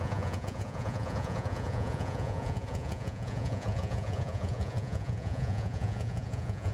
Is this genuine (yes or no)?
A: no